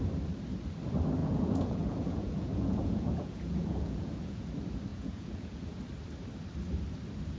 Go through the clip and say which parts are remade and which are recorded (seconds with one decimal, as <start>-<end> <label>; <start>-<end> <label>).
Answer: 0.0-1.2 recorded; 1.2-4.5 remade; 4.5-4.9 recorded; 4.9-5.8 remade; 5.8-7.4 recorded

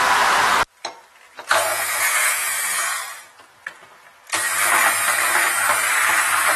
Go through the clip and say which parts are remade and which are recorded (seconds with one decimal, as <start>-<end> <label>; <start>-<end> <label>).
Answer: 0.0-1.7 recorded; 1.7-3.0 remade; 3.0-6.6 recorded

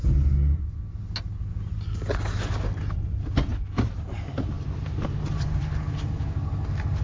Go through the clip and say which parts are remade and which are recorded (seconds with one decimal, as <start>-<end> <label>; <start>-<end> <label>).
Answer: 0.0-7.0 recorded

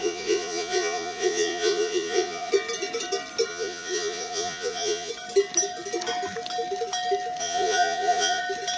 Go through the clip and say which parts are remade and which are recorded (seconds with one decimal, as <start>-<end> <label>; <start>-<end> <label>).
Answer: 0.0-2.5 remade; 2.5-3.5 recorded; 3.5-5.1 remade; 5.1-7.4 recorded; 7.4-8.4 remade; 8.4-8.8 recorded

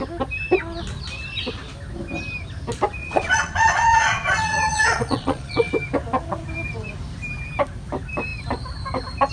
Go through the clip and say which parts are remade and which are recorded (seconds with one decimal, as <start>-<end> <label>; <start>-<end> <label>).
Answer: 0.0-3.0 recorded; 3.0-5.7 remade; 5.7-9.3 recorded

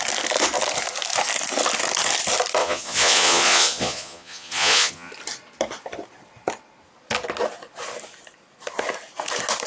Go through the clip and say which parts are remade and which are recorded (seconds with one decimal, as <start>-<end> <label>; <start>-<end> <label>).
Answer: 0.0-2.6 recorded; 2.6-5.1 remade; 5.1-9.7 recorded

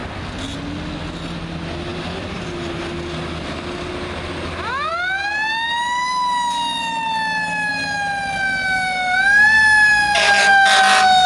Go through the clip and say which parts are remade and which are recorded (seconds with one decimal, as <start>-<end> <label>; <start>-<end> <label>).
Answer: 0.0-11.3 recorded